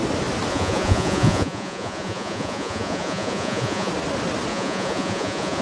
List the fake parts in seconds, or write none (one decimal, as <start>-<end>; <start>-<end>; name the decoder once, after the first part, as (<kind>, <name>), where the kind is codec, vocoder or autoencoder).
0.5-3.9 (vocoder, Vocos); 4.5-5.6